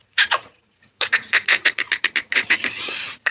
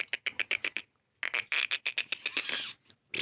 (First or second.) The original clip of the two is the second